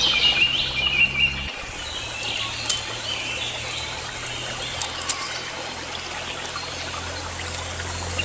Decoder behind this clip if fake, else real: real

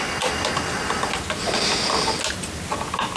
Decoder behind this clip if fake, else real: real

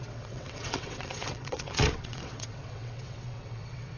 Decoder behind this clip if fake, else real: fake, vocoder, WaveNeXt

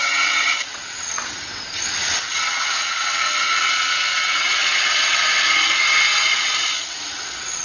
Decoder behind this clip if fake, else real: fake, vocoder, WaveNeXt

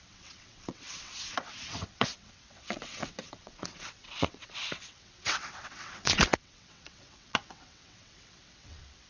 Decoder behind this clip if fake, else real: fake, vocoder, WaveNeXt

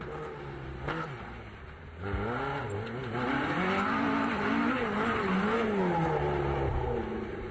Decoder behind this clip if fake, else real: real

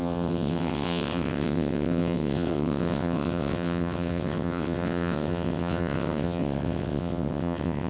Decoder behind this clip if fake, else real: fake, vocoder, WaveNeXt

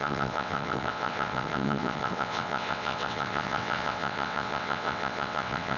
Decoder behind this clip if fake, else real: fake, vocoder, WaveNeXt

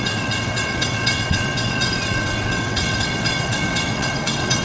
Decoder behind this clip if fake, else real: fake, vocoder, WaveNeXt